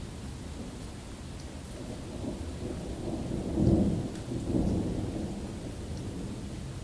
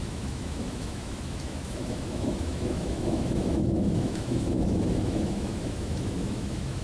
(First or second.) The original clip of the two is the first